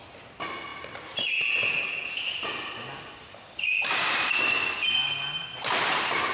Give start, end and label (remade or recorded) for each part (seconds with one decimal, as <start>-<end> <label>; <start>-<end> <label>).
0.0-6.3 recorded